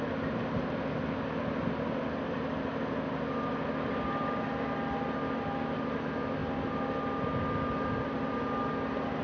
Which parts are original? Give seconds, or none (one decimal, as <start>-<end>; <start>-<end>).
0.0-9.2